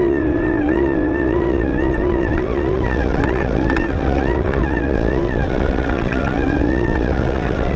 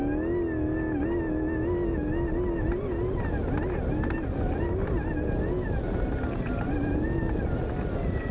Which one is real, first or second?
second